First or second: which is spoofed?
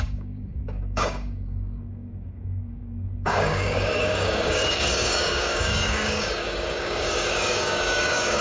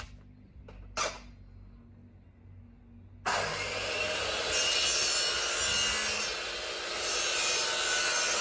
first